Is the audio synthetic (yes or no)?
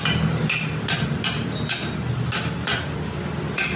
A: no